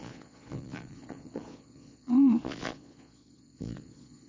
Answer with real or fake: fake